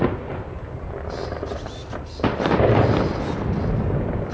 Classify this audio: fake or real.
real